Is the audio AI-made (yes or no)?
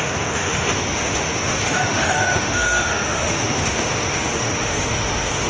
yes